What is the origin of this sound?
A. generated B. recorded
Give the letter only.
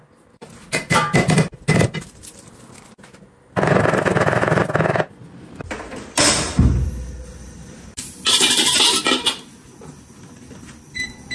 B